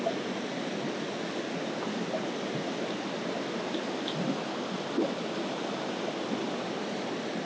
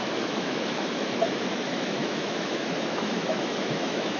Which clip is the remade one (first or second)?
second